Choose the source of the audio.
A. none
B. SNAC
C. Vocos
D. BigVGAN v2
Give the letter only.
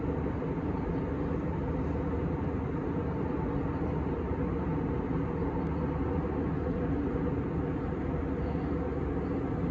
A